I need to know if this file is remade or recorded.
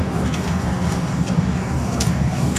remade